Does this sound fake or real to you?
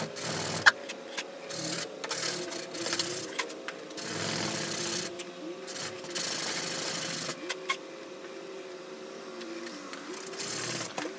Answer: real